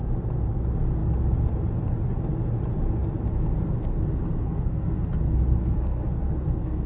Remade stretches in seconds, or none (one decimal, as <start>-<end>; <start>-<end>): 4.4-5.1; 5.6-6.9

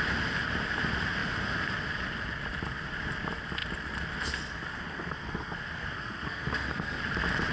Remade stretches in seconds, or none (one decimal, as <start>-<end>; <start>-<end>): 4.7-7.0

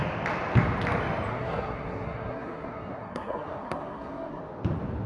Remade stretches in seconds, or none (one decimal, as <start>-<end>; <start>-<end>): 1.3-4.4